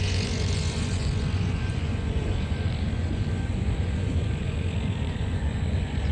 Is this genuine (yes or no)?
no